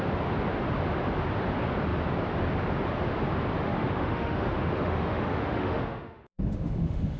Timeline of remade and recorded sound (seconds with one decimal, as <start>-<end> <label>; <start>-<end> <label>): 0.0-3.6 recorded; 3.6-7.2 remade